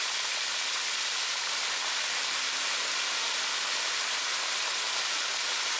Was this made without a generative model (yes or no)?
no